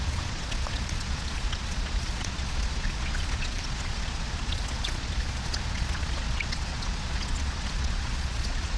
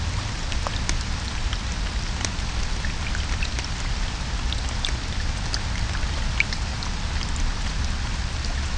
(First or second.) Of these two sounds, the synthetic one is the first